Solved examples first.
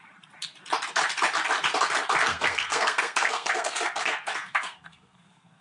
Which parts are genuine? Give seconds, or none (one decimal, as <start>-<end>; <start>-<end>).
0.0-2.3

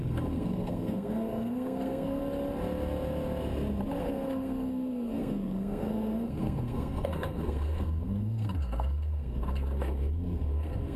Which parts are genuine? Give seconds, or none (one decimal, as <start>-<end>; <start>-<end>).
2.2-4.0

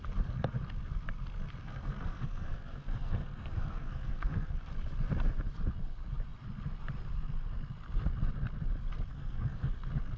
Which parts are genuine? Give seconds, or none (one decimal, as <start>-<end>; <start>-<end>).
0.0-1.6; 4.7-9.1; 9.7-10.2

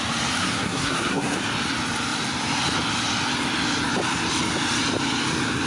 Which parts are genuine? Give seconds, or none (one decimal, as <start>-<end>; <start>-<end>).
0.0-0.4; 1.4-5.7

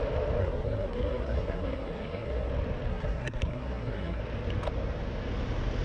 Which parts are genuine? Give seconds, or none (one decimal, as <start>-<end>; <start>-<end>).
0.0-0.4; 2.5-2.9; 4.2-5.8

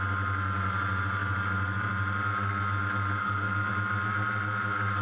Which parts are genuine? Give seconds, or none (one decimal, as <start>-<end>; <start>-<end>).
0.0-3.2; 3.7-5.0

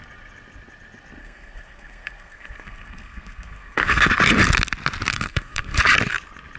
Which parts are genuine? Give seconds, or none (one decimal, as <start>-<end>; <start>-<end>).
0.0-1.2; 4.1-5.1; 5.8-6.6